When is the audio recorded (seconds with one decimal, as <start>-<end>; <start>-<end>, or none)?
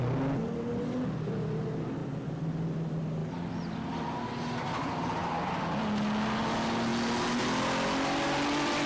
0.0-2.0; 2.5-8.9